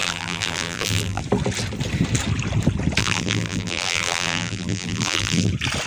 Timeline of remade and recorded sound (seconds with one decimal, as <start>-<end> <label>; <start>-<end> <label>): 0.0-1.2 remade; 1.2-3.0 recorded; 3.0-5.5 remade; 5.5-5.9 recorded